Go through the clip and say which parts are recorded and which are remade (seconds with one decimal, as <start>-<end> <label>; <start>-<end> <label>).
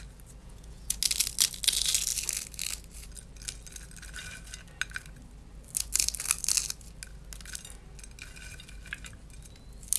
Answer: 0.0-0.4 recorded; 0.4-1.0 remade; 1.0-10.0 recorded